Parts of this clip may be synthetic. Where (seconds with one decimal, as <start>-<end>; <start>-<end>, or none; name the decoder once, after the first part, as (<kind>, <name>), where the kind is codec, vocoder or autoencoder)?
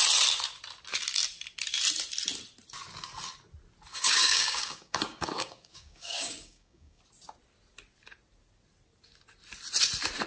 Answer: 3.9-7.0 (codec, DAC)